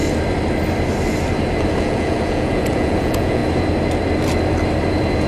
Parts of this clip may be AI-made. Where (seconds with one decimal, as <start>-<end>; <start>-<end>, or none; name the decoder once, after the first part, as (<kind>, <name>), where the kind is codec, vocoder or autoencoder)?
1.8-3.4 (vocoder, Vocos)